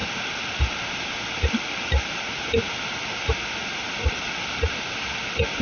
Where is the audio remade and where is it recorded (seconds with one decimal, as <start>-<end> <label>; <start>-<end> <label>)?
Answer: 0.0-5.6 recorded

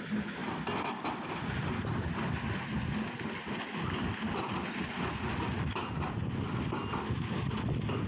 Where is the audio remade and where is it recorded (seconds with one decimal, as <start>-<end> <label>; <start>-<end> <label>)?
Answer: 0.0-8.1 recorded

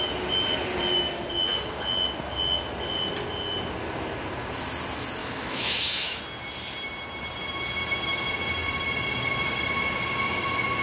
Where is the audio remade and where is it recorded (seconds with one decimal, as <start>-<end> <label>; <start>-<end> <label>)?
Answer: 0.0-5.2 recorded; 5.2-6.2 remade; 6.2-10.8 recorded

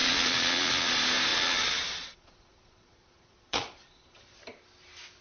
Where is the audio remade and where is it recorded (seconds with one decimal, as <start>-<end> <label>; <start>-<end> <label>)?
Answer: 0.0-0.9 remade; 0.9-1.3 recorded; 1.3-4.4 remade; 4.4-5.2 recorded

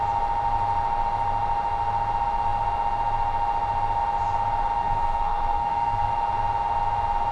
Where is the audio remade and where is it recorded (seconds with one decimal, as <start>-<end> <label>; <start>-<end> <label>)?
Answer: 0.0-4.8 recorded; 4.8-6.1 remade; 6.1-7.3 recorded

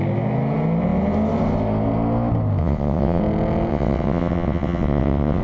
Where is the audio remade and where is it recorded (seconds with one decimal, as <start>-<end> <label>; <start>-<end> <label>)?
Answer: 0.0-2.6 recorded; 2.6-3.2 remade; 3.2-3.7 recorded; 3.7-5.4 remade